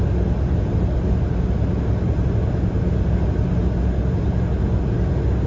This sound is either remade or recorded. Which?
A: recorded